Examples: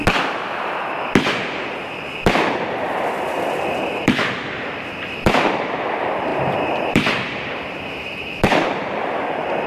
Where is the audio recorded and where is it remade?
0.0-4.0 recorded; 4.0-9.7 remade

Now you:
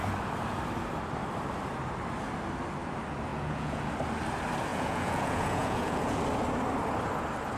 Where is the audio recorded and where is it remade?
0.0-3.3 recorded; 3.3-3.9 remade; 3.9-4.7 recorded; 4.7-6.2 remade; 6.2-7.6 recorded

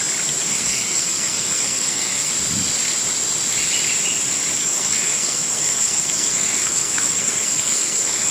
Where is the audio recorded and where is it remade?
0.0-0.5 recorded; 0.5-2.3 remade; 2.3-4.6 recorded; 4.6-8.3 remade

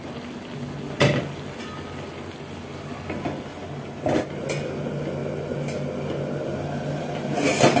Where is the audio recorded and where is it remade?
0.0-7.8 recorded

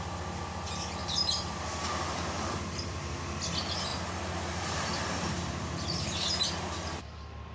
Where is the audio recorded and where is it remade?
0.0-1.0 recorded; 1.0-2.6 remade; 2.6-3.9 recorded; 3.9-7.0 remade; 7.0-7.5 recorded